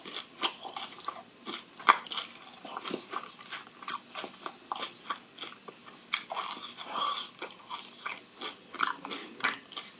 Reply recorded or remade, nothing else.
recorded